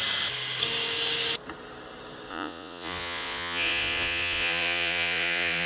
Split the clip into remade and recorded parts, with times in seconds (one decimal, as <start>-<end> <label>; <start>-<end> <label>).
0.0-2.3 recorded; 2.3-5.7 remade